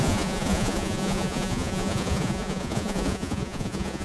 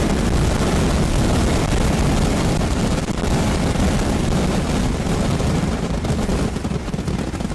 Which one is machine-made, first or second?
first